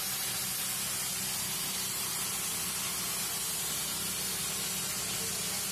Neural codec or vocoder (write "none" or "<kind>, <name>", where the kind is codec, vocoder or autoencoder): none